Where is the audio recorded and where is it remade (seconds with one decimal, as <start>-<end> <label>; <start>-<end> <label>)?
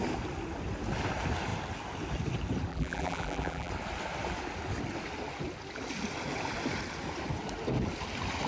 0.0-2.7 recorded; 2.7-3.7 remade; 3.7-8.5 recorded